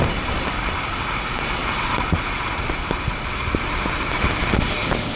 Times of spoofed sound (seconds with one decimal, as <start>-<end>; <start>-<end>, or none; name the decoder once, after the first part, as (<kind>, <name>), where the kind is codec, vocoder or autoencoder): none